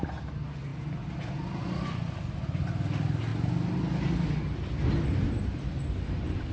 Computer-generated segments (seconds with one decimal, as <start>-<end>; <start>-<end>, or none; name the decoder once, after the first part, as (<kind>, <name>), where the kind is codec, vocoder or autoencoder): none